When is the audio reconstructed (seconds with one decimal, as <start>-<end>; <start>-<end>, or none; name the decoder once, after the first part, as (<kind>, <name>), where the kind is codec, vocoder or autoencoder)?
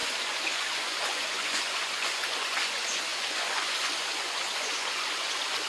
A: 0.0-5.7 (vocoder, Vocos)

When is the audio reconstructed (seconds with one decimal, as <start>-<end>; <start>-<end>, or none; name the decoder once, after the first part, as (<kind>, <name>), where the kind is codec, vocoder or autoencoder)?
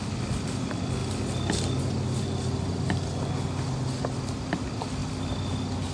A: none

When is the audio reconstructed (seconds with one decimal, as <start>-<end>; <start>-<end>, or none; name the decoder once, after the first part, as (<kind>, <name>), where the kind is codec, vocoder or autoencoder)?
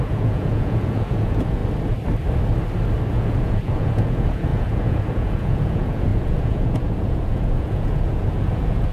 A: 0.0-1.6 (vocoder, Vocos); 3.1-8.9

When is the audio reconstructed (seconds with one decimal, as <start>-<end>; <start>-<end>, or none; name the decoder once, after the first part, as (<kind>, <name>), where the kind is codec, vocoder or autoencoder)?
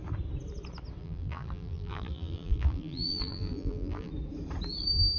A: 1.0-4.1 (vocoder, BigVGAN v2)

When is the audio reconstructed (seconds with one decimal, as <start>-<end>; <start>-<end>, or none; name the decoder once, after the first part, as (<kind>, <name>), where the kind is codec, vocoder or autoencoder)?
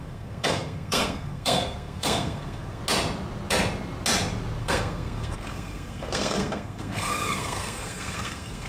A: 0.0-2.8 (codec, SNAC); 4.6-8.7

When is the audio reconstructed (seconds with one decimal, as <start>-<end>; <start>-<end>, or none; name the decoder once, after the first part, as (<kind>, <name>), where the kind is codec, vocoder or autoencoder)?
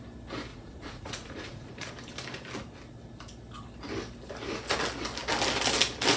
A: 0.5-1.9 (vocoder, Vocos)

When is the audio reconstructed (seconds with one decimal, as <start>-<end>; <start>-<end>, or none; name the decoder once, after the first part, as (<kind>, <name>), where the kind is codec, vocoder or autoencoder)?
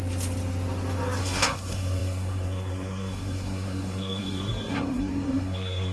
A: 1.2-5.9 (codec, SNAC)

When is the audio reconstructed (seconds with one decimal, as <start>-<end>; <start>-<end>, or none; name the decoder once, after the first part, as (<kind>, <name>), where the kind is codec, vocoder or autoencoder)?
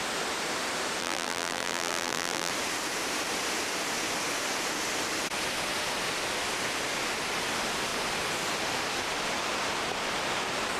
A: 1.0-2.5 (vocoder, BigVGAN v2)